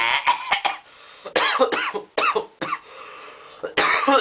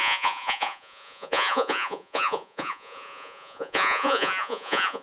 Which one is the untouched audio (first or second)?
first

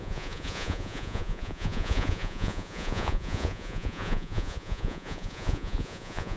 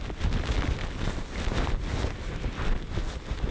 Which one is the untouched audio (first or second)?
second